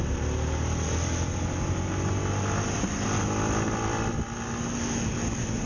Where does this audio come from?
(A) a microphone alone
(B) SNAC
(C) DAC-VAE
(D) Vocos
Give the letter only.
A